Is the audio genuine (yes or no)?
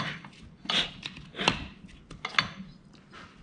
yes